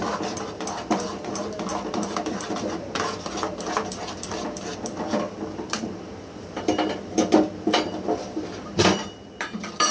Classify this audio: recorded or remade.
remade